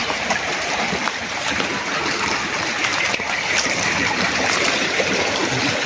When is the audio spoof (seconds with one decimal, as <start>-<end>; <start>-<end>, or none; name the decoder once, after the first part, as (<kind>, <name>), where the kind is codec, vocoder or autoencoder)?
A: 0.0-1.3 (vocoder, BigVGAN v2); 2.9-5.1